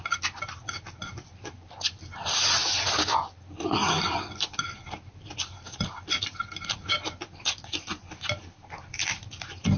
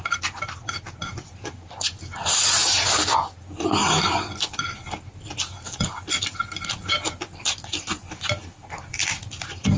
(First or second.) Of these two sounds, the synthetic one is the first